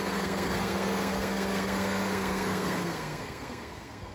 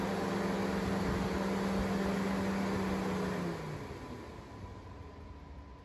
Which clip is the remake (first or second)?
first